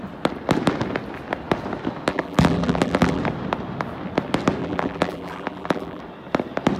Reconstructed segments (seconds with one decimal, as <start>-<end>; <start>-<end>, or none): 2.1-3.2; 4.6-6.0